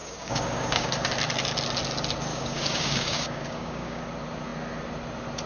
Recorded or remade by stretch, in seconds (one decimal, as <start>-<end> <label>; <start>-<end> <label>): 0.0-0.9 remade; 0.9-2.3 recorded; 2.3-4.0 remade; 4.0-5.5 recorded